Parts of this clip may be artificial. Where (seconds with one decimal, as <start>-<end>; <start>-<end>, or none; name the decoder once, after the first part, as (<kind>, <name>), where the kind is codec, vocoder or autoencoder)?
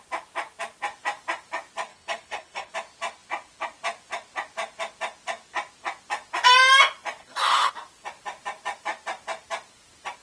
1.9-2.7 (codec, HILCodec); 7.2-7.7